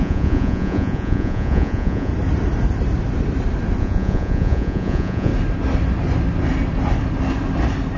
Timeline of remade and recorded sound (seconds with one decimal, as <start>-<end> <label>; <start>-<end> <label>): 0.0-2.1 remade; 2.1-3.8 recorded; 3.8-5.3 remade; 5.3-8.0 recorded